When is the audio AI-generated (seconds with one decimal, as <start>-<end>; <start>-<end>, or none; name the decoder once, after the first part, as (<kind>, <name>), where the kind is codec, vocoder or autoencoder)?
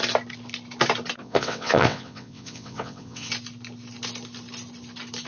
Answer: 1.2-3.3 (vocoder, WaveNeXt)